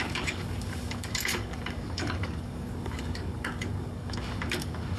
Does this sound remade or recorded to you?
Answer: remade